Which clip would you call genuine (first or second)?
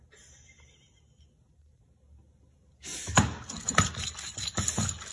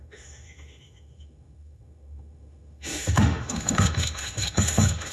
first